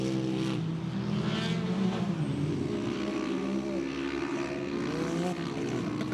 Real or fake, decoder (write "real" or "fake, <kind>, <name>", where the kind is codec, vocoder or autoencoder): real